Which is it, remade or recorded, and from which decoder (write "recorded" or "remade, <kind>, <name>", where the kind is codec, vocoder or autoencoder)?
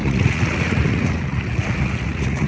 remade, vocoder, Vocos